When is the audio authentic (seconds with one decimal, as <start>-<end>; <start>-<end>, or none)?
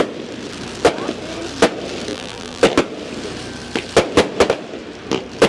0.0-2.1; 2.6-5.5